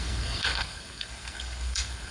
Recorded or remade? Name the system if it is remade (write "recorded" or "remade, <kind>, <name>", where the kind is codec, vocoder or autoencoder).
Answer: remade, codec, SNAC